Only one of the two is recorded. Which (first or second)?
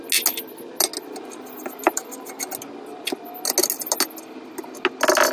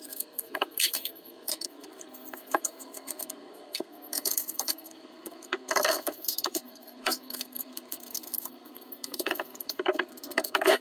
first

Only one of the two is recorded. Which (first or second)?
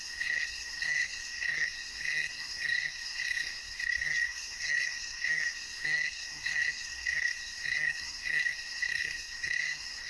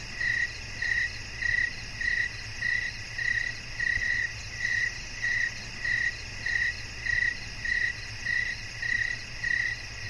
second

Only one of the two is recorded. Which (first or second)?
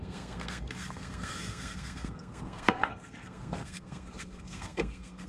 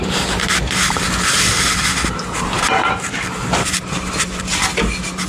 second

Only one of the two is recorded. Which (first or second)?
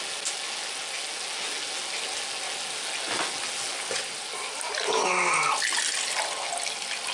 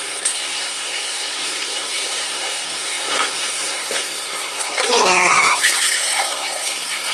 first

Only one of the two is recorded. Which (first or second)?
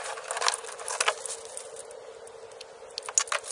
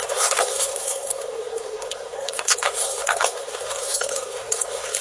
first